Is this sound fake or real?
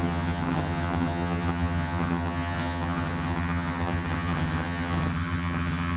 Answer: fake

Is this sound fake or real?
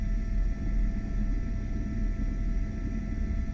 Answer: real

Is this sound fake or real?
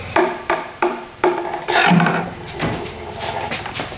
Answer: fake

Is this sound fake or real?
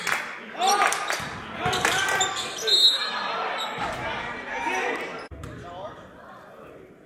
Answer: real